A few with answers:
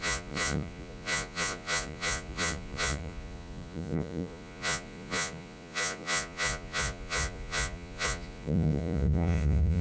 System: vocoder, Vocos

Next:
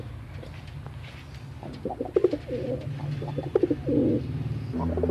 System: none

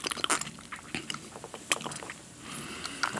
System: none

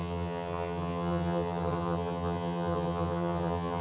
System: vocoder, HiFi-GAN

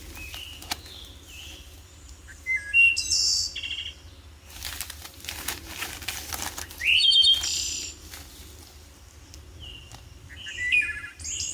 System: none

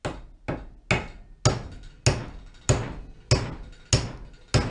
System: none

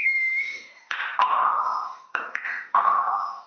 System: autoencoder, DAC-VAE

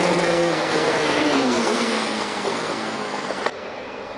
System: codec, SNAC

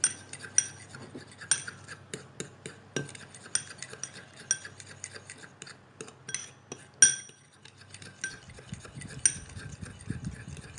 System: none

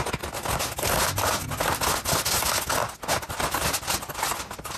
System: none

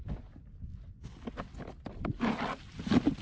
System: none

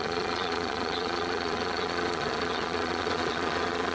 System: vocoder, Vocos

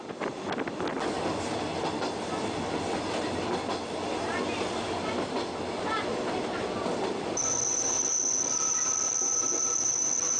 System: none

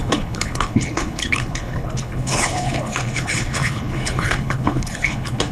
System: codec, HILCodec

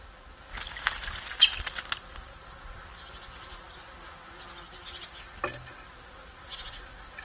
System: none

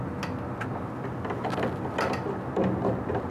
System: none